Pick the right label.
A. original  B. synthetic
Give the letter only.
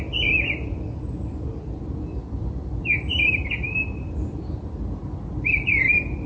A